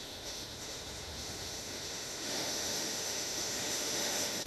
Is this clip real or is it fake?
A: fake